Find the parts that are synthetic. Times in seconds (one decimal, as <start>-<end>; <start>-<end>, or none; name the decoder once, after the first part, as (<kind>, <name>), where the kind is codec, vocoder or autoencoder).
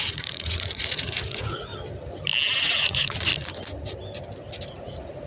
0.0-1.7 (vocoder, Vocos); 2.6-3.3; 4.7-5.3